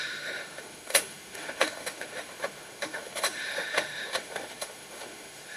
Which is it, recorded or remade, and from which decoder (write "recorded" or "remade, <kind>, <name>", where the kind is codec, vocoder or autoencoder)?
remade, autoencoder, DAC-VAE